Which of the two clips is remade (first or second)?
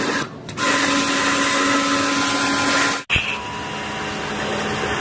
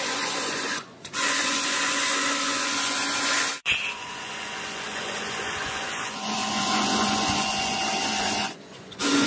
second